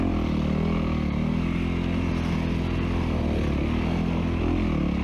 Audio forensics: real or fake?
real